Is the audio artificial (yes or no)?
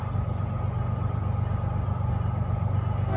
no